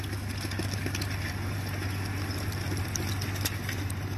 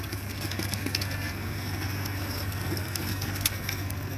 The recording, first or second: first